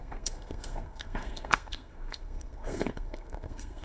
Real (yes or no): no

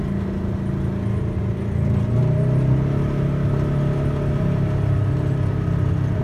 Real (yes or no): yes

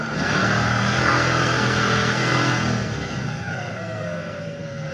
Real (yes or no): no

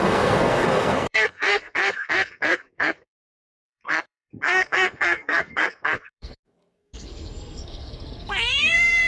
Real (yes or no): no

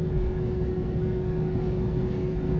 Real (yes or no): no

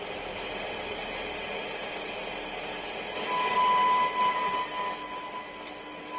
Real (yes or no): yes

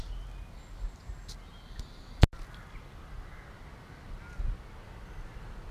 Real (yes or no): yes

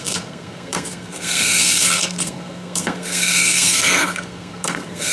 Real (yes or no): no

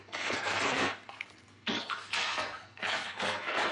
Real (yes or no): no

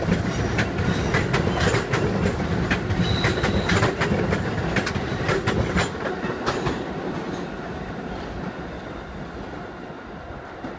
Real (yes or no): yes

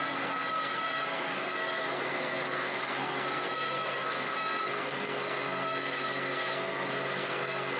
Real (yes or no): no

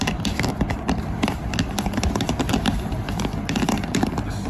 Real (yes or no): yes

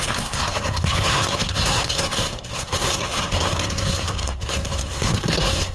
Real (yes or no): no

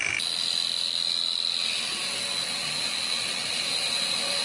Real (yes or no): yes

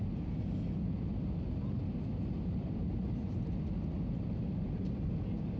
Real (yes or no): yes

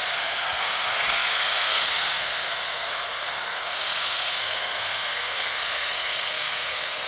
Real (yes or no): no